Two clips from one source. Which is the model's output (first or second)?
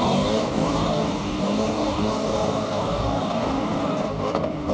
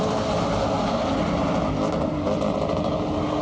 first